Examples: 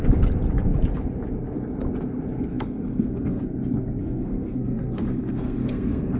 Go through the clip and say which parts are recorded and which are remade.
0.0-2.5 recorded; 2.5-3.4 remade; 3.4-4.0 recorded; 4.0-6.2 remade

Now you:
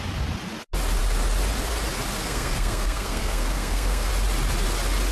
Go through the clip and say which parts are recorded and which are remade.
0.0-2.2 recorded; 2.2-4.1 remade; 4.1-5.1 recorded

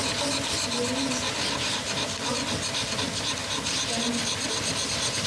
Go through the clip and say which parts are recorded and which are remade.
0.0-5.3 recorded

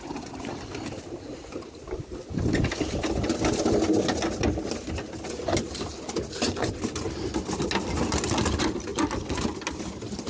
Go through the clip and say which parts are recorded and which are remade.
0.0-10.3 recorded

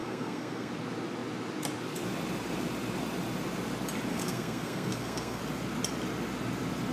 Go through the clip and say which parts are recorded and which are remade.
0.0-0.7 remade; 0.7-4.1 recorded; 4.1-5.4 remade; 5.4-6.9 recorded